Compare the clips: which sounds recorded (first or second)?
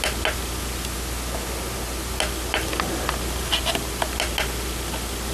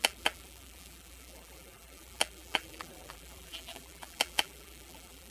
first